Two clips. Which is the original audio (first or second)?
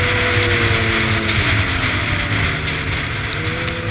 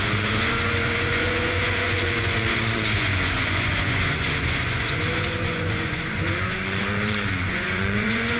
first